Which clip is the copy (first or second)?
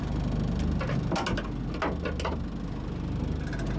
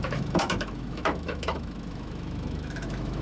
second